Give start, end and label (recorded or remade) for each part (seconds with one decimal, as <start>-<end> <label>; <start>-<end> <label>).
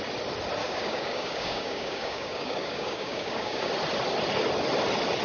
0.0-0.6 recorded; 0.6-3.7 remade; 3.7-5.2 recorded